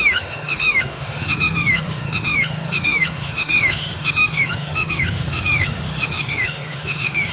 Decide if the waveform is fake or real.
fake